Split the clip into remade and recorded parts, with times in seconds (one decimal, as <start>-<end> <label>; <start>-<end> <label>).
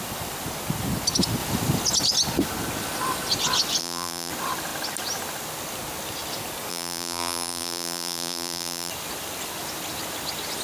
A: 0.0-3.8 recorded; 3.8-4.3 remade; 4.3-6.7 recorded; 6.7-8.9 remade; 8.9-10.6 recorded